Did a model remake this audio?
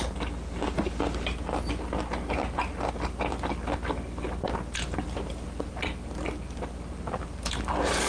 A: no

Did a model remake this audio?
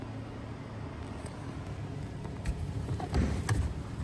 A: no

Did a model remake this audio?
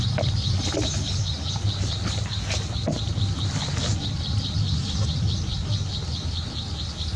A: no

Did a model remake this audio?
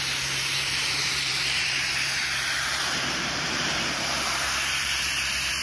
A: yes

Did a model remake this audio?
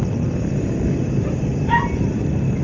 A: no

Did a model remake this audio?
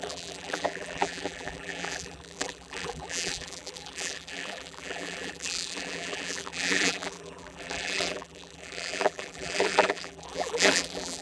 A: yes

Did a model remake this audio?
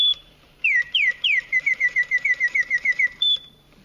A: yes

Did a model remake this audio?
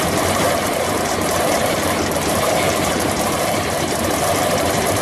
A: yes